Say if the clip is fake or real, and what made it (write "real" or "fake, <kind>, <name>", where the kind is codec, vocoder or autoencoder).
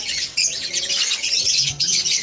fake, vocoder, WaveNeXt